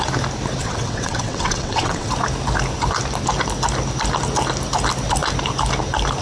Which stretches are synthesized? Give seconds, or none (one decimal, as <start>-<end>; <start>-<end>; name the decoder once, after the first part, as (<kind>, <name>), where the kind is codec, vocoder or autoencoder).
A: 0.6-2.1 (vocoder, WaveNeXt)